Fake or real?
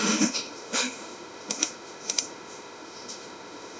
fake